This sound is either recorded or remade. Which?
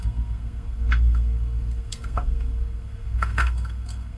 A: remade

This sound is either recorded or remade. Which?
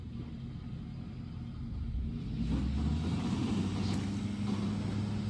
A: recorded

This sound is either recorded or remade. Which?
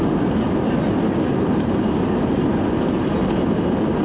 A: recorded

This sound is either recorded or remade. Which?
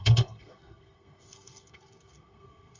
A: remade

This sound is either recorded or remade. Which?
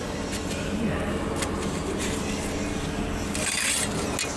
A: recorded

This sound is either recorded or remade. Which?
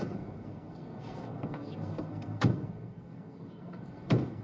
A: remade